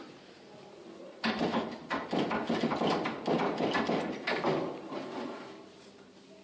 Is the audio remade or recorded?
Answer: recorded